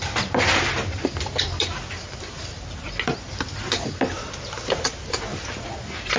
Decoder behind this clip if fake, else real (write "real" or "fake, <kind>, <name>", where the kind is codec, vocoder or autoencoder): real